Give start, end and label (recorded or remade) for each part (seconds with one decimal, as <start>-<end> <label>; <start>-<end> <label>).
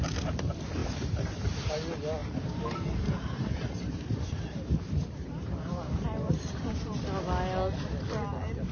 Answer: 0.0-0.8 recorded; 0.8-1.7 remade; 1.7-2.2 recorded; 2.2-6.7 remade; 6.7-8.7 recorded